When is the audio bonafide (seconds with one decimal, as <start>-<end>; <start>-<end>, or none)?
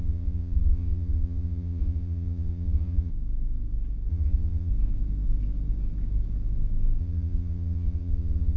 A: 3.1-4.1; 4.7-7.0